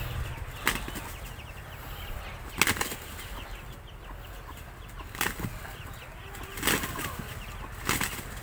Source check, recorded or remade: recorded